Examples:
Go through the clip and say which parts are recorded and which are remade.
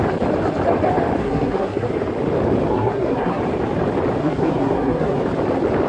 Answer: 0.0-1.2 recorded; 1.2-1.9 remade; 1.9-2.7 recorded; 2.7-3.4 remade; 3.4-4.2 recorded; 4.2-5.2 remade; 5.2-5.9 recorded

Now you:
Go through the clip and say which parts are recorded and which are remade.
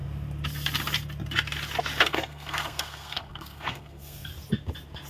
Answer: 0.0-2.0 recorded; 2.0-4.3 remade; 4.3-5.1 recorded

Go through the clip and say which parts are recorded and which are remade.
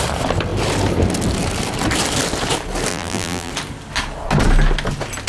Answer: 0.0-2.9 recorded; 2.9-3.5 remade; 3.5-5.3 recorded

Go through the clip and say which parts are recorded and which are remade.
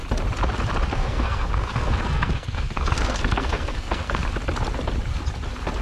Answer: 0.0-0.9 recorded; 0.9-4.2 remade; 4.2-5.8 recorded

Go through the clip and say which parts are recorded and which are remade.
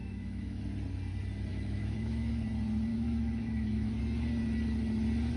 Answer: 0.0-0.6 remade; 0.6-1.5 recorded; 1.5-2.3 remade; 2.3-2.9 recorded; 2.9-4.0 remade; 4.0-5.4 recorded